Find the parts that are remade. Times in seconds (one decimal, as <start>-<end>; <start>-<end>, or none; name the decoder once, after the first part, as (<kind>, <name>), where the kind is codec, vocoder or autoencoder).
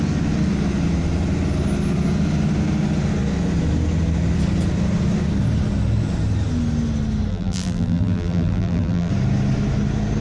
7.3-9.1 (vocoder, BigVGAN v2)